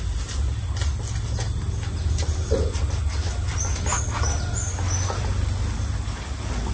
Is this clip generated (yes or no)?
no